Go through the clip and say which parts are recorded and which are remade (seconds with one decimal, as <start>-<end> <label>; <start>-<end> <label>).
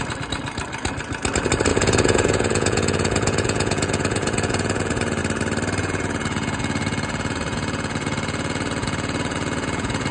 0.0-1.7 recorded; 1.7-5.2 remade; 5.2-5.8 recorded; 5.8-10.1 remade